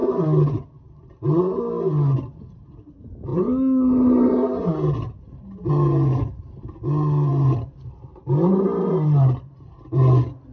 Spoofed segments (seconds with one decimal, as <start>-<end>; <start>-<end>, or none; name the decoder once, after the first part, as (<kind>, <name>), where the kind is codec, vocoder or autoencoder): none